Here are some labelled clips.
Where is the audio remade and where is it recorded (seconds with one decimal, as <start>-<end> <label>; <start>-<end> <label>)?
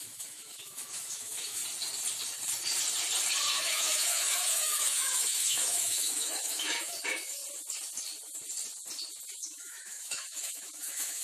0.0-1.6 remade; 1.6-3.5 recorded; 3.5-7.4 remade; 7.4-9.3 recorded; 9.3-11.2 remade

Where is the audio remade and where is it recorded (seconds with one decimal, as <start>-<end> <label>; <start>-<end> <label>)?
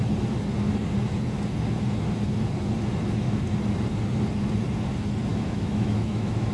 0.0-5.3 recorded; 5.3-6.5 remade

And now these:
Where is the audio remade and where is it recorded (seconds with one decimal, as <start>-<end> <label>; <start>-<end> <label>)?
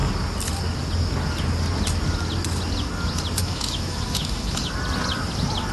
0.0-3.4 recorded; 3.4-4.7 remade; 4.7-5.7 recorded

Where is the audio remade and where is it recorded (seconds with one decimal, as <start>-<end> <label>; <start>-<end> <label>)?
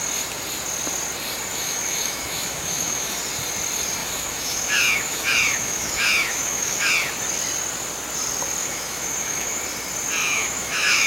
0.0-1.5 recorded; 1.5-3.2 remade; 3.2-4.0 recorded; 4.0-6.9 remade; 6.9-8.6 recorded; 8.6-9.6 remade; 9.6-10.2 recorded; 10.2-11.1 remade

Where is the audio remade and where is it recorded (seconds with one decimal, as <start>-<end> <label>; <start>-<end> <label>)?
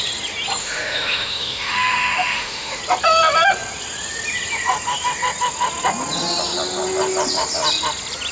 0.0-0.6 recorded; 0.6-2.8 remade; 2.8-8.3 recorded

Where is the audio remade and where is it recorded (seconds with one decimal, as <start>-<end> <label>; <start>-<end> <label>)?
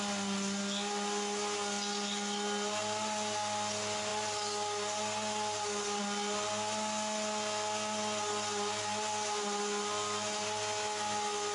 0.0-11.5 recorded